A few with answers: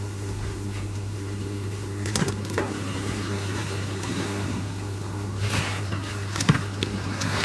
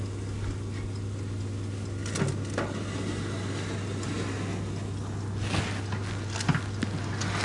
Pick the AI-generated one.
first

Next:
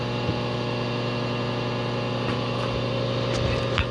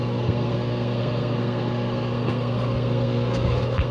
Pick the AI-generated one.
second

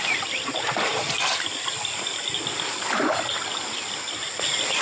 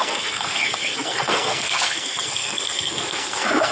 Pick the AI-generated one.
second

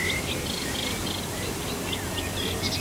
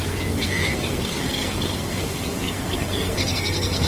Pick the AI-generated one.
second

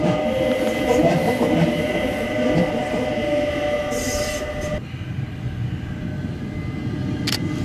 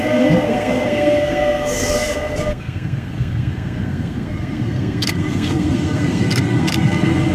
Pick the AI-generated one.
second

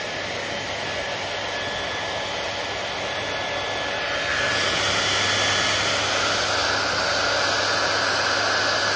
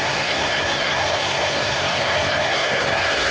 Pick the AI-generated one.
second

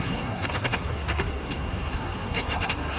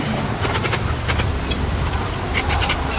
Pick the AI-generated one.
first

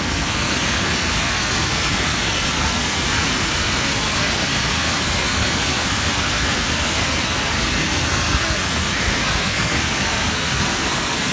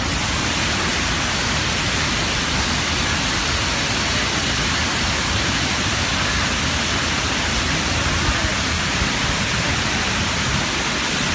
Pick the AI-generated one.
first